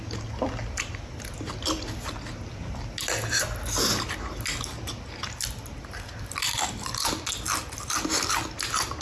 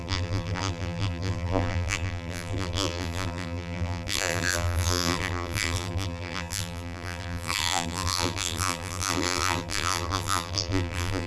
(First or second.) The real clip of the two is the first